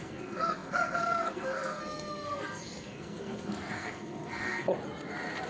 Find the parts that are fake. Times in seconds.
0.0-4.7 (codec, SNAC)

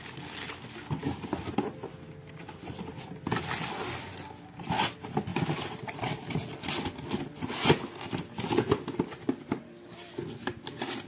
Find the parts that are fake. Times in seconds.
none

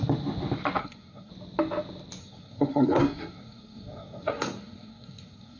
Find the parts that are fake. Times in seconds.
0.8-1.3 (codec, SNAC); 2.2-5.6

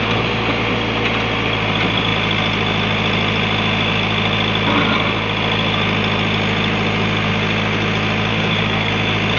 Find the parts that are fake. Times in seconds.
8.3-8.9 (codec, SNAC)

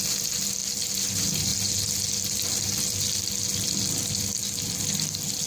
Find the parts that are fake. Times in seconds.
none